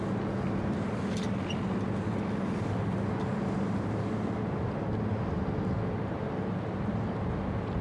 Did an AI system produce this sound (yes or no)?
no